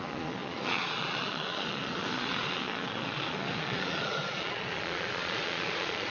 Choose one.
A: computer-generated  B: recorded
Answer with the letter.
A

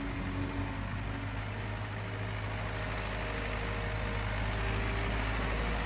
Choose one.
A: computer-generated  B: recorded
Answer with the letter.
B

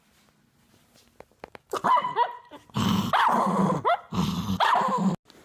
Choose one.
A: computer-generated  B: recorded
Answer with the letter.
B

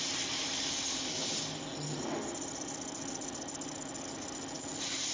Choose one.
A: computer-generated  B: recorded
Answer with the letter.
B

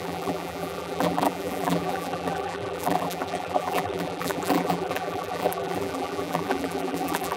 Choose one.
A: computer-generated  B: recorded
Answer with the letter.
A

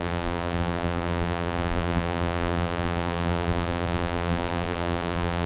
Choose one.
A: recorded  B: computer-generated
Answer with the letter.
B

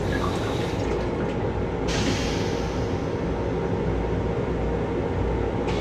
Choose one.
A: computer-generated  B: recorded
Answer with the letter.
B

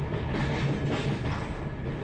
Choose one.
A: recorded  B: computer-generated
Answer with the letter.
A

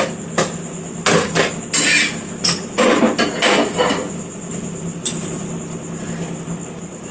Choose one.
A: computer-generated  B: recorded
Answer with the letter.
B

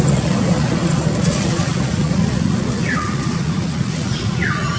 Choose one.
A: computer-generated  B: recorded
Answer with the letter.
A